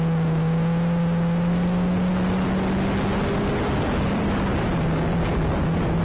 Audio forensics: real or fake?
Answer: real